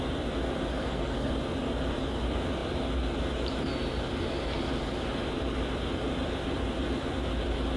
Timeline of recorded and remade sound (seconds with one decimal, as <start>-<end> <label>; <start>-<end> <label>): 0.0-0.8 recorded; 0.8-1.3 remade; 1.3-7.8 recorded